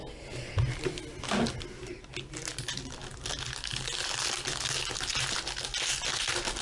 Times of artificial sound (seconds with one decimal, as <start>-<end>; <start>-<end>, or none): none